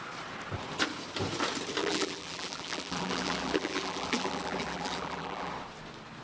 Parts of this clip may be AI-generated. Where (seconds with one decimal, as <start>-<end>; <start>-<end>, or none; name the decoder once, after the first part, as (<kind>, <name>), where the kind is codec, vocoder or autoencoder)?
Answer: 1.8-5.5 (vocoder, BigVGAN v2)